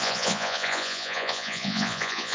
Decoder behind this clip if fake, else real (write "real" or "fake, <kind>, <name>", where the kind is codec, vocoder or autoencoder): fake, vocoder, Vocos